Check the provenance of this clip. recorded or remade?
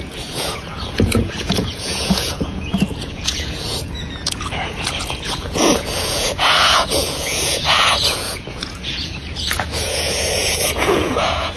remade